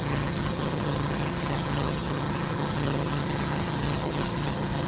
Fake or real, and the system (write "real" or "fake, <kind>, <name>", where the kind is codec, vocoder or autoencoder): fake, vocoder, HiFi-GAN